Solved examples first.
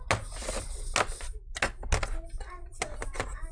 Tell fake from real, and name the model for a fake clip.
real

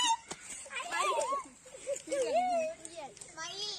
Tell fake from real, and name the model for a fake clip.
real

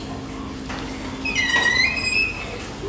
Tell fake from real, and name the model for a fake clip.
real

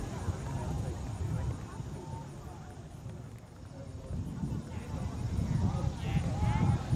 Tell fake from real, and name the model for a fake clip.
real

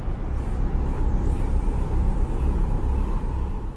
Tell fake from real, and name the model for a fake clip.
real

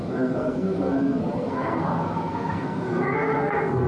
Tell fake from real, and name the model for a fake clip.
fake, codec, SNAC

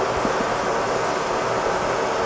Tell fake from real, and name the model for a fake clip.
real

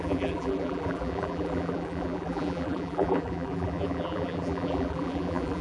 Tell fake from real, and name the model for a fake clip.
fake, vocoder, BigVGAN v2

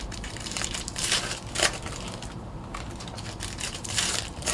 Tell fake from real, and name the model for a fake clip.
fake, vocoder, BigVGAN v2